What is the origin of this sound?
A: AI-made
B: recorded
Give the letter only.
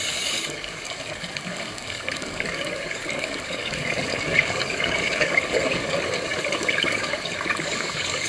A